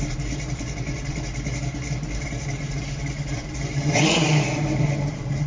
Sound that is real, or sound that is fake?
fake